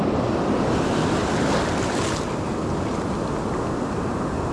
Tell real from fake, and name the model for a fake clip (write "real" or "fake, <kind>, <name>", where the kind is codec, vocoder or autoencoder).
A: real